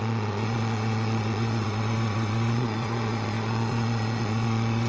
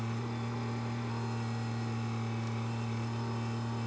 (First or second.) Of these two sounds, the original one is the second